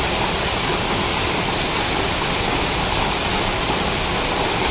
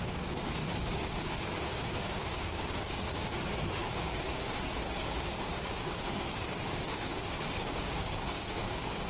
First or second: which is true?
first